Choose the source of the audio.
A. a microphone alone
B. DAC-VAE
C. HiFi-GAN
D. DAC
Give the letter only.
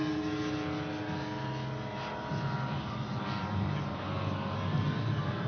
A